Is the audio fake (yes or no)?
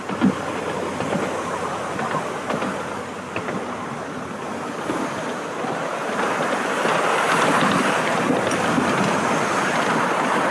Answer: no